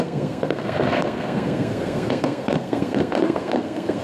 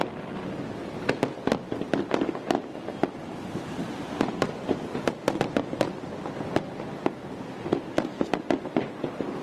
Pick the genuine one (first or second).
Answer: second